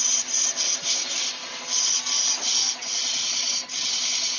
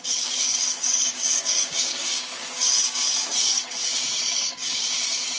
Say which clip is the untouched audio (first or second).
first